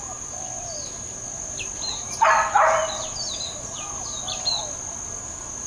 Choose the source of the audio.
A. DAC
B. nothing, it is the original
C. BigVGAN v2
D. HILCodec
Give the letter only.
B